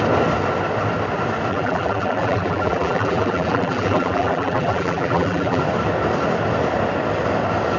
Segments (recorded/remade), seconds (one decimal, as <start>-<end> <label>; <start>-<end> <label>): 0.0-1.5 recorded; 1.5-5.6 remade; 5.6-7.8 recorded